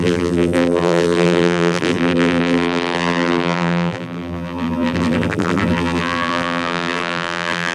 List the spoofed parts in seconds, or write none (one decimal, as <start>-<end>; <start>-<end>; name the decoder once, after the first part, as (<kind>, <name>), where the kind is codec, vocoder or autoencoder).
0.0-7.7 (vocoder, BigVGAN v2)